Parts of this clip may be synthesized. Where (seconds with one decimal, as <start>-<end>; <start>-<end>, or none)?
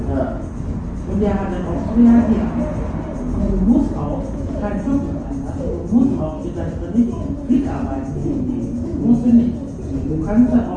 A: none